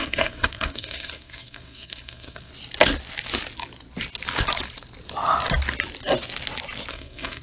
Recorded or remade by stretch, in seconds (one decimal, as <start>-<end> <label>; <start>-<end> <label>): 0.0-2.5 remade; 2.5-6.9 recorded; 6.9-7.4 remade